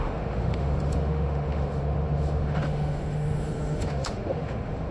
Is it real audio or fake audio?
fake